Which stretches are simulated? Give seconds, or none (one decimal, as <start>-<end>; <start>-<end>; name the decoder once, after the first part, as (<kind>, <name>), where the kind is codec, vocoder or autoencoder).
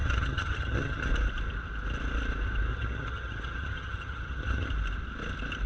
0.0-1.1 (vocoder, HiFi-GAN); 2.7-4.7